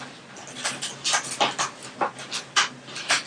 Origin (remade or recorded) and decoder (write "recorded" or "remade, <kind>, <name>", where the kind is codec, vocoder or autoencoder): recorded